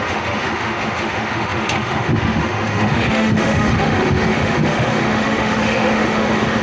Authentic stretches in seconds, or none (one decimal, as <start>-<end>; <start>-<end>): none